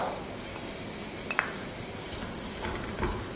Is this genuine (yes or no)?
yes